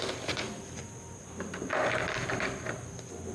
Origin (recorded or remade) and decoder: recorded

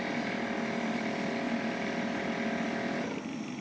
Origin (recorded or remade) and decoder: recorded